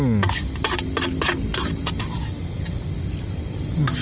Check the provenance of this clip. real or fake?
real